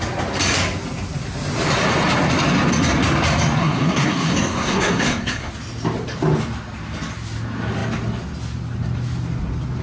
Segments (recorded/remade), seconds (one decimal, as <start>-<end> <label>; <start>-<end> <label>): 0.0-3.6 recorded; 3.6-5.5 remade; 5.5-9.8 recorded